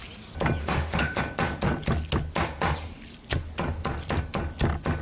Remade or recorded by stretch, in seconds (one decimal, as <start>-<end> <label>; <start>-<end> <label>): 0.0-0.6 recorded; 0.6-1.2 remade; 1.2-5.0 recorded